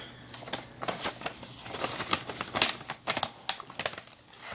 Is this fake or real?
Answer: real